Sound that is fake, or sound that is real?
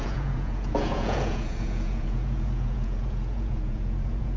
fake